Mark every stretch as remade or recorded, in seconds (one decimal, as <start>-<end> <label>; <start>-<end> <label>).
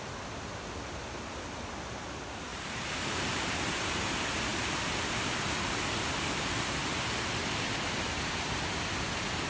0.0-2.5 recorded; 2.5-4.0 remade; 4.0-9.5 recorded